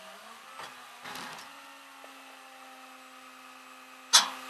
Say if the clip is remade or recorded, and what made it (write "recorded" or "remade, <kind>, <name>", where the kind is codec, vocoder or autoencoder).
recorded